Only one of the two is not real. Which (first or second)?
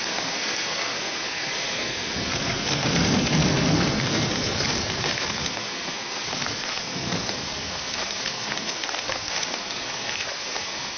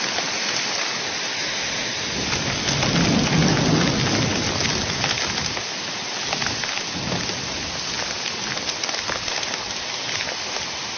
first